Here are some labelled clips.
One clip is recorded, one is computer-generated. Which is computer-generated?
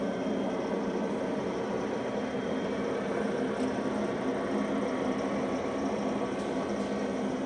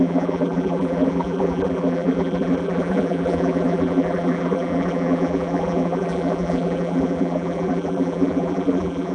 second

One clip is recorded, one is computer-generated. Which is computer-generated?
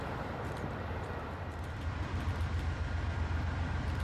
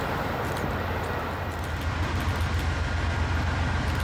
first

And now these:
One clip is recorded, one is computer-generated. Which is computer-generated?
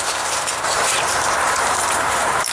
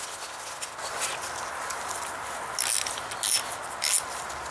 first